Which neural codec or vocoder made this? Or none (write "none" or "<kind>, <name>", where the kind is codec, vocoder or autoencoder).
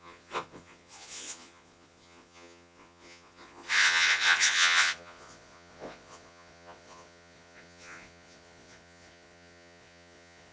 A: vocoder, Vocos